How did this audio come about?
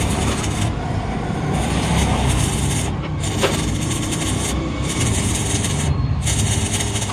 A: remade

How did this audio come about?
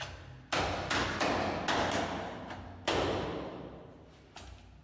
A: recorded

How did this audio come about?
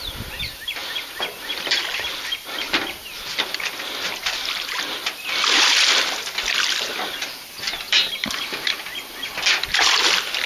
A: recorded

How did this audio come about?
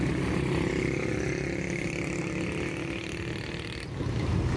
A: recorded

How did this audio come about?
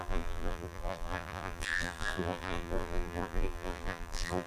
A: remade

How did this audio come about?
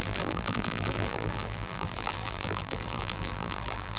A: remade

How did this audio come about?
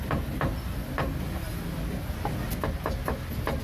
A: recorded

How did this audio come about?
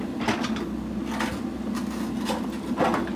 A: recorded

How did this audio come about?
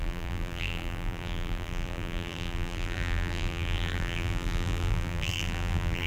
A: remade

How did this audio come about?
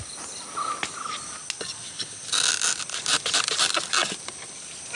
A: recorded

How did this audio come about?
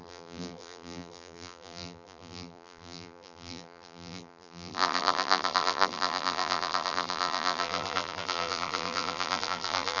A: remade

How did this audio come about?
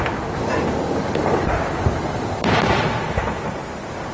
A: recorded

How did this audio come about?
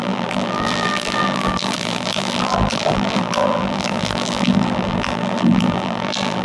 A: remade